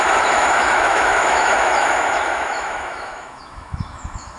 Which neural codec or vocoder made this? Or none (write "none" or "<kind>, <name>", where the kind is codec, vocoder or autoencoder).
autoencoder, DAC-VAE